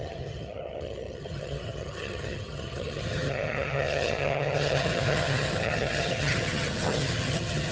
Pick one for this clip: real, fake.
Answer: fake